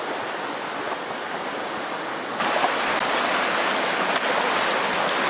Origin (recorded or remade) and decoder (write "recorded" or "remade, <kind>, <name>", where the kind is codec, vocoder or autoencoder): recorded